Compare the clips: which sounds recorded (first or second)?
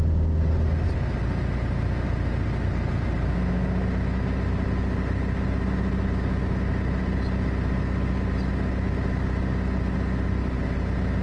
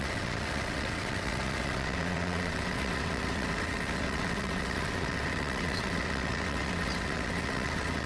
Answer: first